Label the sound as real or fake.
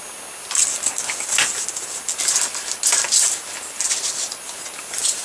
real